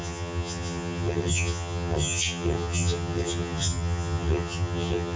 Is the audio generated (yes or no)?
yes